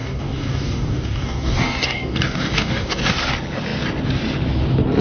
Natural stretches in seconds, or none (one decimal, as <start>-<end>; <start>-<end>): 3.0-5.0